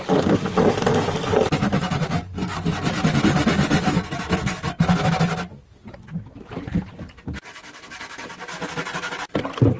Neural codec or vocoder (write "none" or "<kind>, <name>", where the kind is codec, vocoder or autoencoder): none